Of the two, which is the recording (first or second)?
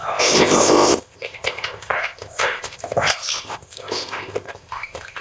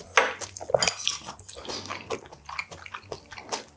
second